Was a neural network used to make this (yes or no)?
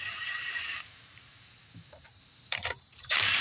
yes